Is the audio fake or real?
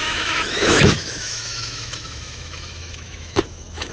fake